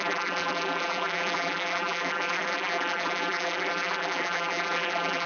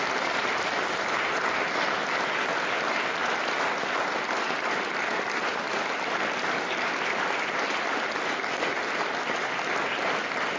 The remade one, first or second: first